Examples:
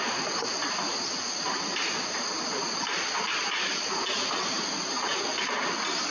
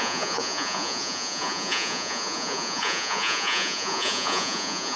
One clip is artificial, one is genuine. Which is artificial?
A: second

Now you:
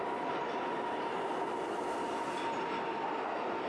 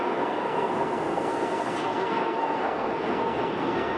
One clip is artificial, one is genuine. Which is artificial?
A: second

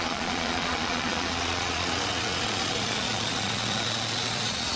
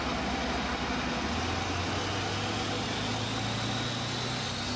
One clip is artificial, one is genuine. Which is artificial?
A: first